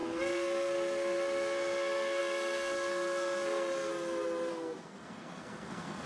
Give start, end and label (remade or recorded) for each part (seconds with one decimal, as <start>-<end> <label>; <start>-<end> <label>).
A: 0.0-3.9 remade; 3.9-4.5 recorded; 4.5-6.1 remade